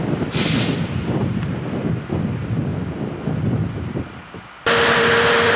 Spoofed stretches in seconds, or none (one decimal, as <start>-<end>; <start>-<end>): none